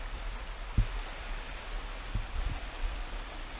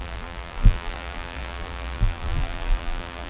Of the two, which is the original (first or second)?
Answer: first